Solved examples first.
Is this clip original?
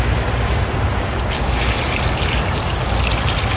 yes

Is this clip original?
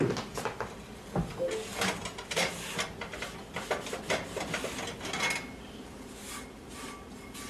yes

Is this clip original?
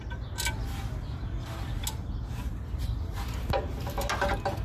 yes